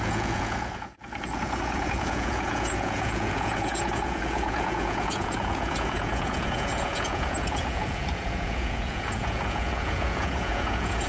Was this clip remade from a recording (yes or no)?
yes